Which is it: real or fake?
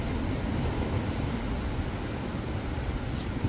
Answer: real